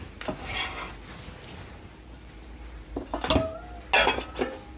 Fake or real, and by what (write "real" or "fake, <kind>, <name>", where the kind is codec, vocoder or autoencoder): real